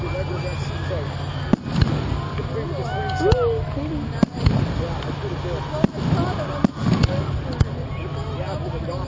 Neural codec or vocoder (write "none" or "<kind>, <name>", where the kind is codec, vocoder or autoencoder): none